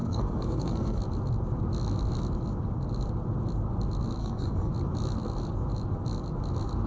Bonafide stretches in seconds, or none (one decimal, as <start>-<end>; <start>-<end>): 1.0-4.2; 4.7-6.9